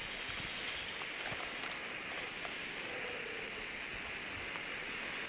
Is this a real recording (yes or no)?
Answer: yes